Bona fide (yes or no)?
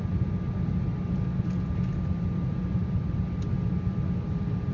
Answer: yes